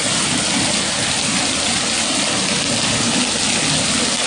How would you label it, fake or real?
real